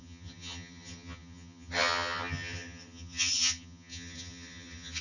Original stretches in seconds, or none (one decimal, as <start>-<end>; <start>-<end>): none